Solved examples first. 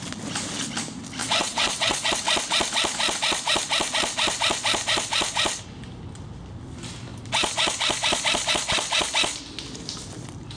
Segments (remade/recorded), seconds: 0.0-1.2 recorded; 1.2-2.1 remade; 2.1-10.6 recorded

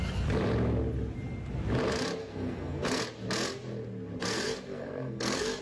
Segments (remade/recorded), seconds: 0.0-2.2 recorded; 2.2-3.0 remade; 3.0-4.2 recorded; 4.2-5.6 remade

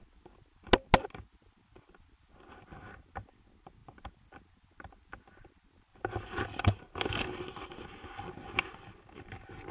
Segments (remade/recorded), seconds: 0.0-5.9 recorded; 5.9-7.1 remade; 7.1-9.7 recorded

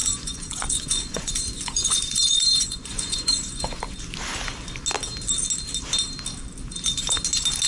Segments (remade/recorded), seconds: 0.0-3.8 remade; 3.8-7.7 recorded

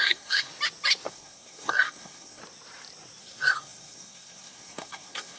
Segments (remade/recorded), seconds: 0.0-0.5 remade; 0.5-1.1 recorded; 1.1-2.4 remade; 2.4-3.2 recorded; 3.2-5.4 remade

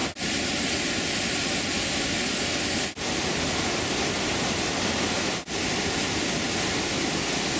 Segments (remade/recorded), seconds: 0.0-7.6 recorded

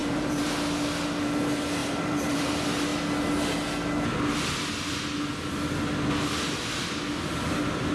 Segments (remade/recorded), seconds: 0.0-0.5 remade; 0.5-1.8 recorded; 1.8-2.5 remade; 2.5-7.9 recorded

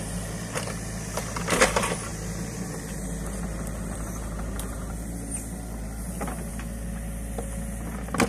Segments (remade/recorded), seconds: 0.0-8.3 recorded